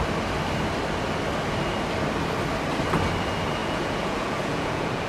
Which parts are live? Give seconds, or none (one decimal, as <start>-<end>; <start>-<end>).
0.0-3.6